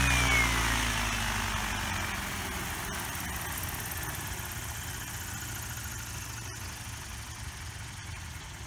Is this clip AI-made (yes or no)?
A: no